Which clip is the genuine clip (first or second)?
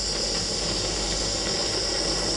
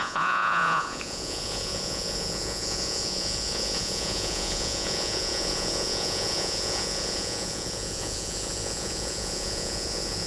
first